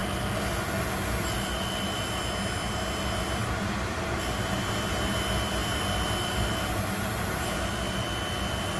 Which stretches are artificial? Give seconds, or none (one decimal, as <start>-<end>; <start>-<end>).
none